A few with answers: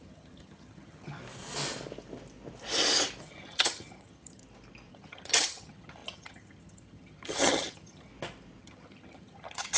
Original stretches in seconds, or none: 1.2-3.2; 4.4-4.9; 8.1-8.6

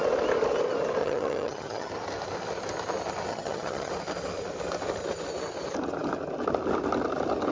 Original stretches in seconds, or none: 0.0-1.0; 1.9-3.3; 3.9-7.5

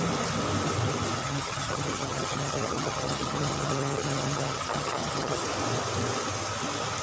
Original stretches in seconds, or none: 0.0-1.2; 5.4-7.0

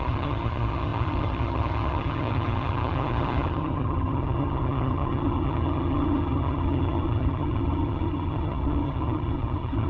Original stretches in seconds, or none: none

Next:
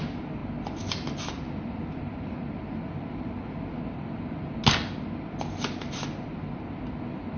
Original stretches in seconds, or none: 0.0-7.4

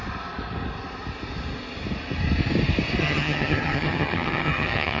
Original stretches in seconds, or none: 0.0-3.0

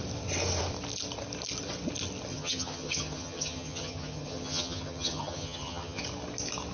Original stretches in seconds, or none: 0.0-2.3; 6.0-6.7